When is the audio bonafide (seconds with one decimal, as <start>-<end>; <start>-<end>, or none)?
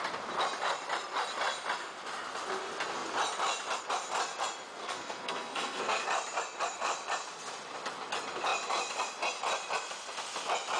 0.0-4.8; 6.0-10.8